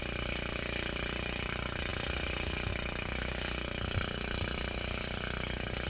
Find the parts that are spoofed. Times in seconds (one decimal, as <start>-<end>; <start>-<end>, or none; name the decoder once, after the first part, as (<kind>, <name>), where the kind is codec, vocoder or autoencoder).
none